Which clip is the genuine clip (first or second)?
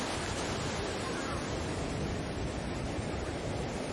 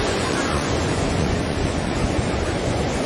first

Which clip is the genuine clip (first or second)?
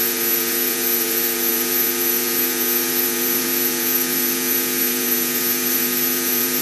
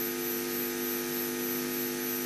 second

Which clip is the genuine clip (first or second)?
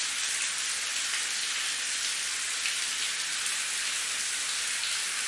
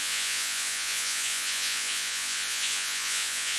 first